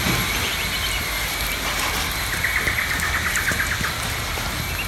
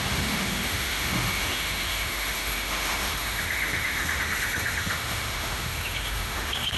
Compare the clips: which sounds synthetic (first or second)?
second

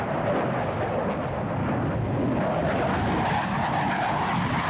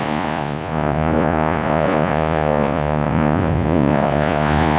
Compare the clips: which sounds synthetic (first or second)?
second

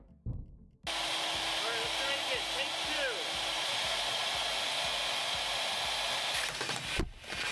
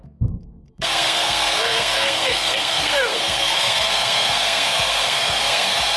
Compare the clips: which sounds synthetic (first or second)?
second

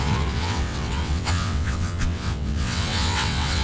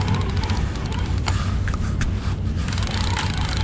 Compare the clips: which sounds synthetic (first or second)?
first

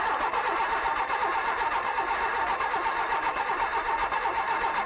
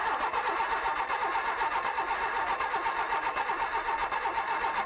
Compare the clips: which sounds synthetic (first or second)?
first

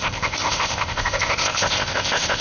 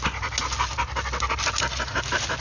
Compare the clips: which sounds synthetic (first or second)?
first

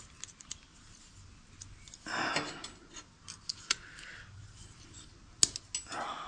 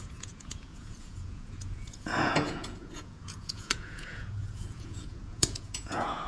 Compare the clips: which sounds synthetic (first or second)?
second